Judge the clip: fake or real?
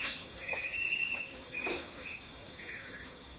fake